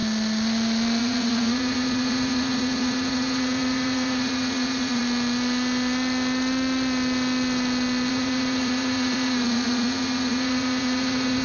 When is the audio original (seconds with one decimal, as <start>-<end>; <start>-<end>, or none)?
0.0-1.0; 5.0-8.1